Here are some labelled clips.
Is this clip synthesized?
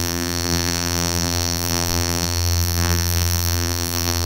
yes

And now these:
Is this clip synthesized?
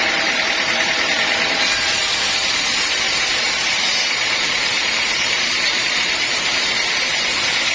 yes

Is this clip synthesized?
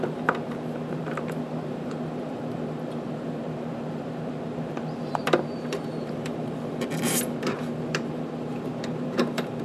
yes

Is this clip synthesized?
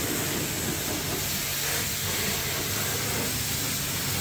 no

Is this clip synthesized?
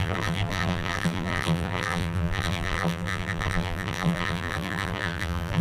yes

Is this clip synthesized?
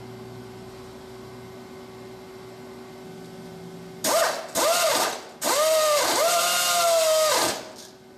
no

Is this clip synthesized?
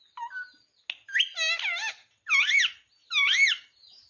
no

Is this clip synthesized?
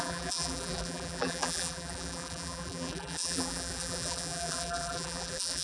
yes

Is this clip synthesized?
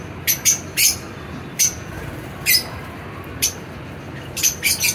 yes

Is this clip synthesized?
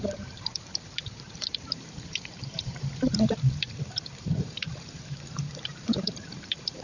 yes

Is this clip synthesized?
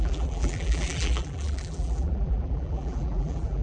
yes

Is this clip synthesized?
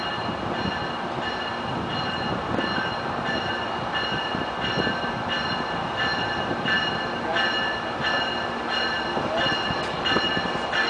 no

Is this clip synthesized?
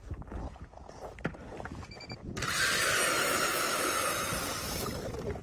no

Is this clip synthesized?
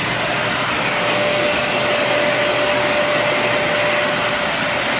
no